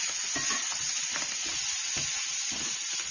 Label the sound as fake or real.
real